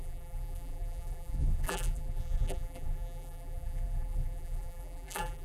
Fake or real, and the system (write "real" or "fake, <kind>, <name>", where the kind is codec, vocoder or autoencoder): fake, vocoder, BigVGAN v2